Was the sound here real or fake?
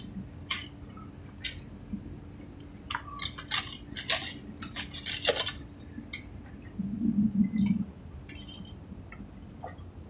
real